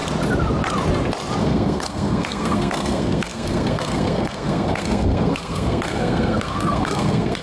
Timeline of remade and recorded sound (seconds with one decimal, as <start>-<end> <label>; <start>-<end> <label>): 0.0-1.4 recorded; 1.4-7.4 remade